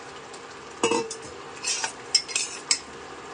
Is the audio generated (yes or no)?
no